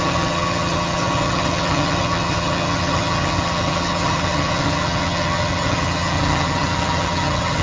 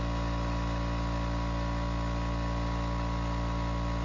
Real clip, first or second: second